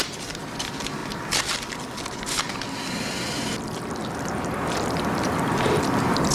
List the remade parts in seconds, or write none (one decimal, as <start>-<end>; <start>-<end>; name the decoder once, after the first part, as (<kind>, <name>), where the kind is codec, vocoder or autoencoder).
0.0-1.0 (vocoder, BigVGAN v2); 3.6-6.3